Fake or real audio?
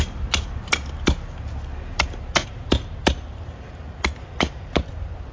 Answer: real